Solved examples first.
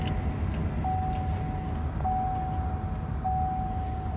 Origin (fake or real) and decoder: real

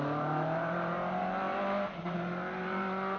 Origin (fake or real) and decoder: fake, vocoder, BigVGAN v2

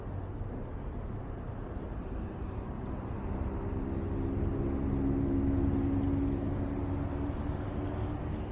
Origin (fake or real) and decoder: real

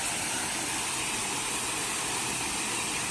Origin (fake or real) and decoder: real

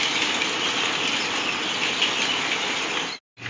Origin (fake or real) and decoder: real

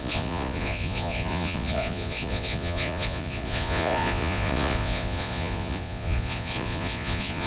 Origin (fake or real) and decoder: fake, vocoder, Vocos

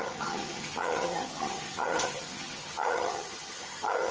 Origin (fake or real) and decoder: fake, vocoder, HiFi-GAN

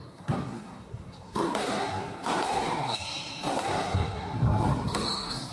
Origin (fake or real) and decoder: fake, codec, SNAC